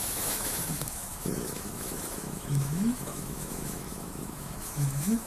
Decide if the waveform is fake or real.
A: fake